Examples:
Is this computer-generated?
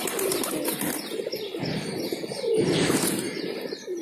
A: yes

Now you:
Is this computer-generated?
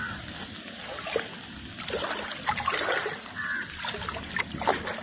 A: no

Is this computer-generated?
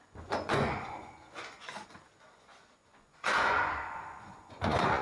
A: yes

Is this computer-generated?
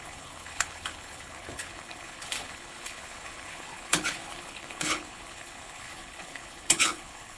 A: yes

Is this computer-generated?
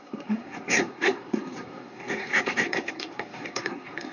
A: yes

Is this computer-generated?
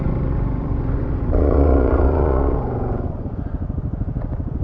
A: yes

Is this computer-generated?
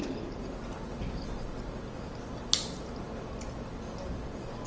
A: no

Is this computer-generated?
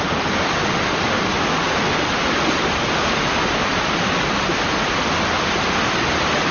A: no